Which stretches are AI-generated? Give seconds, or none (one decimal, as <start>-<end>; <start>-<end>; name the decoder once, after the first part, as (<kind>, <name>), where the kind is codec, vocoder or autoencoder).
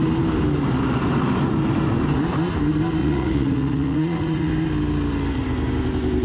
3.0-4.5 (vocoder, Vocos)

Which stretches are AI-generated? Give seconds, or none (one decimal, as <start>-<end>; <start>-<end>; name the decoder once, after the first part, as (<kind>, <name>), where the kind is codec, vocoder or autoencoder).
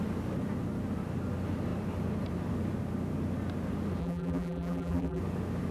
4.0-5.2 (vocoder, BigVGAN v2)